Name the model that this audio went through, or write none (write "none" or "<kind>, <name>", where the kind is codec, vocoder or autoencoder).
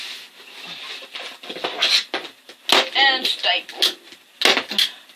none